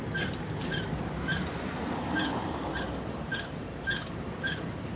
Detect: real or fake real